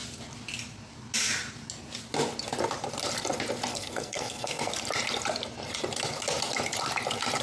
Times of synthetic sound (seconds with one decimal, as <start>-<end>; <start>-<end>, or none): 3.7-4.7